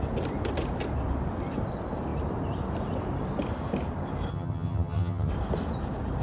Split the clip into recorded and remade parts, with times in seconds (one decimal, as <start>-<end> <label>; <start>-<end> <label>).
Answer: 0.0-4.3 recorded; 4.3-5.3 remade; 5.3-6.2 recorded